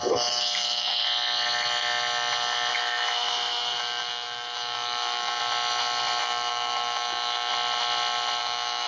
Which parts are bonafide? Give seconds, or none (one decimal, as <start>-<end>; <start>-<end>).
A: 1.0-2.7; 5.4-6.2; 7.5-8.4